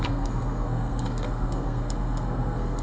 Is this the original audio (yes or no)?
no